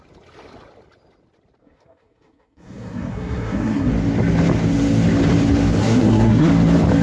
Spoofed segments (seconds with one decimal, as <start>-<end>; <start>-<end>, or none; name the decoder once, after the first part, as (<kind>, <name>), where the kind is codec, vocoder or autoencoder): 1.6-3.9 (codec, SNAC); 5.8-6.5